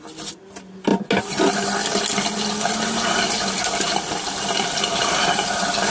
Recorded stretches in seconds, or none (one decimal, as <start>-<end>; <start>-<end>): 0.0-5.9